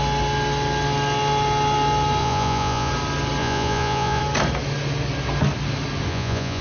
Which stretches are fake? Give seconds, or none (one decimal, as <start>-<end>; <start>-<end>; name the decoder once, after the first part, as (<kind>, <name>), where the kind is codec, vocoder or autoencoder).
2.2-2.9 (vocoder, Vocos); 3.4-4.2; 6.1-6.6